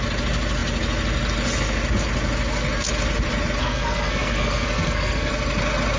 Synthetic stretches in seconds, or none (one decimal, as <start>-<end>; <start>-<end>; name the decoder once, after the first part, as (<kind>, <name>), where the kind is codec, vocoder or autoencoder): 3.6-5.3 (codec, SNAC)